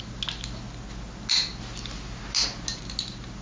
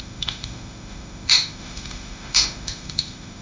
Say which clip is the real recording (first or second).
first